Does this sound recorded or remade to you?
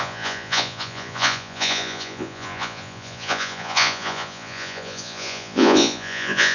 remade